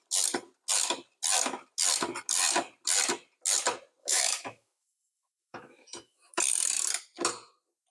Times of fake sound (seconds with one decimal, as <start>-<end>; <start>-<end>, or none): 4.0-6.4